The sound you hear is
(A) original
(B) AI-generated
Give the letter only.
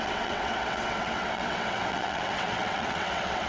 B